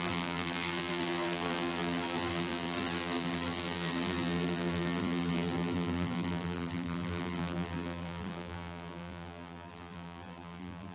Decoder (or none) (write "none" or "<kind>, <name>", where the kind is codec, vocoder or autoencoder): vocoder, BigVGAN v2